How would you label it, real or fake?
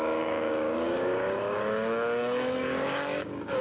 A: fake